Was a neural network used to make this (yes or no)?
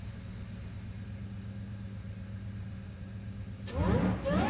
no